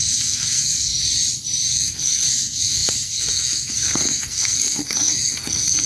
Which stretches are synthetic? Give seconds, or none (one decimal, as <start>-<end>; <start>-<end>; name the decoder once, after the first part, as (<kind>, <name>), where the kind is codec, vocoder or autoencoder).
0.0-0.9 (codec, SNAC); 1.7-5.9